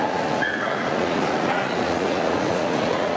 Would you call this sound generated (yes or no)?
yes